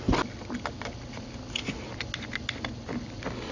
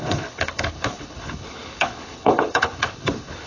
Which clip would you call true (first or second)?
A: first